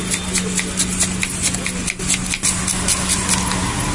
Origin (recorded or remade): recorded